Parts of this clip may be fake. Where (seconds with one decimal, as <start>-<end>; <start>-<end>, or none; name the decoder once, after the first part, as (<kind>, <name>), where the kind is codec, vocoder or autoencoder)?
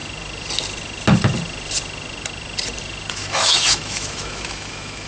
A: 3.1-5.1 (autoencoder, DAC-VAE)